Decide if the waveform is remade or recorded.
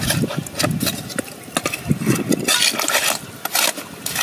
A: recorded